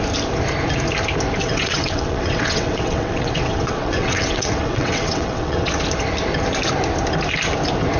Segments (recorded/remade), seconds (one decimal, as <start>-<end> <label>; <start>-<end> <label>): 0.0-1.4 recorded; 1.4-5.7 remade; 5.7-8.0 recorded